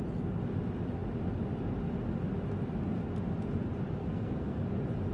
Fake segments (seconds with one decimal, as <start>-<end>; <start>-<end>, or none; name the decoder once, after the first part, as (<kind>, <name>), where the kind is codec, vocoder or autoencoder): 4.0-4.6 (codec, SNAC)